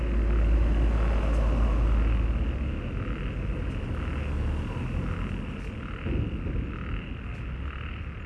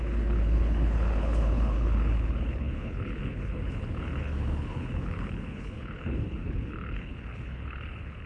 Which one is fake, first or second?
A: second